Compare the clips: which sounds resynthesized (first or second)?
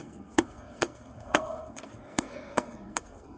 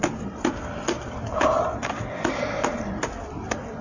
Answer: first